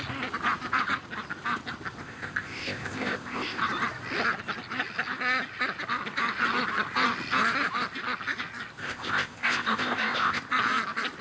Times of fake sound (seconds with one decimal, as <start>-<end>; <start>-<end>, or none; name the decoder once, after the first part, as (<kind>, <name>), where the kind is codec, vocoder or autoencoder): 2.0-3.6 (codec, ZipCodec); 8.8-10.4